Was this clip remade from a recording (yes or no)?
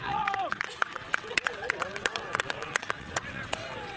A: yes